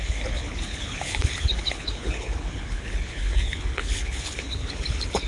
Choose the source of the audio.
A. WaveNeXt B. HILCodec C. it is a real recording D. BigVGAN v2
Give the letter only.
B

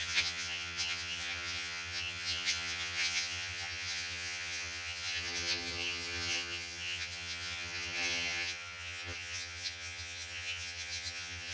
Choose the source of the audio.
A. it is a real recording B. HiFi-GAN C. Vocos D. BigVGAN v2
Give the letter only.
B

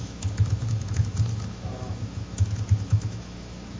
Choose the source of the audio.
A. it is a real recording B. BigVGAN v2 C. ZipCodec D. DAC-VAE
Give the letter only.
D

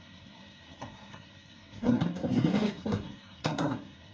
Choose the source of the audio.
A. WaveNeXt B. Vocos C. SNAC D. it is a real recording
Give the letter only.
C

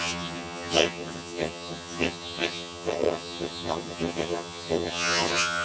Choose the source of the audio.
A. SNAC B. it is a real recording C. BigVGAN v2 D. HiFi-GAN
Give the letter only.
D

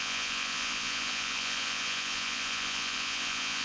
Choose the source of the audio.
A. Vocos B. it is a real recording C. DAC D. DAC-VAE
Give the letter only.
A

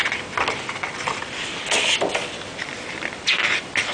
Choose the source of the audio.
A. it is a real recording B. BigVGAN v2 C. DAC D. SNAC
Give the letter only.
A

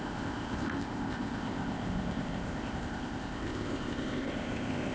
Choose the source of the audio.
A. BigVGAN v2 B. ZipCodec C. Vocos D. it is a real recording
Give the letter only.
B